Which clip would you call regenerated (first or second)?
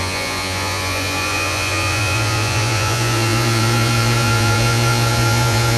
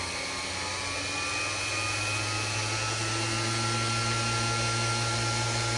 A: first